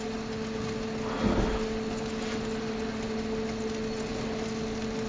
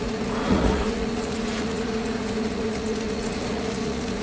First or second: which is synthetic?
second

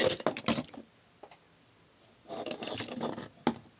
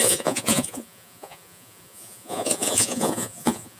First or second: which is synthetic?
second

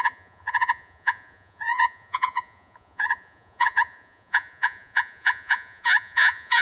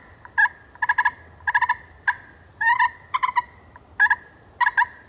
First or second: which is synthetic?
first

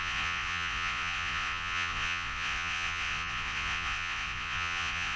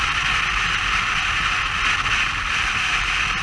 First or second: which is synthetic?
first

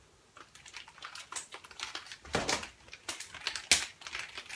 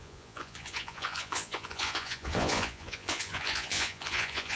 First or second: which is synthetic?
second